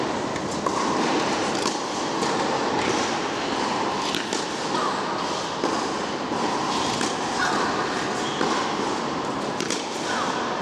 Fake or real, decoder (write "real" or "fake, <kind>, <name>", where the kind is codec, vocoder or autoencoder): real